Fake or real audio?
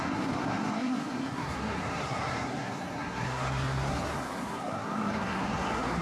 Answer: fake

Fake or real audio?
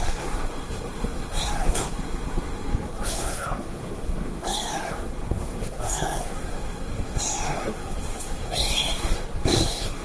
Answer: fake